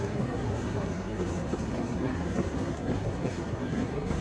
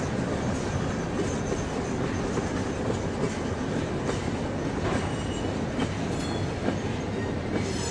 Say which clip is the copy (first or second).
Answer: first